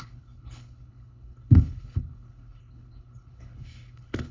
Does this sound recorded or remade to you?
remade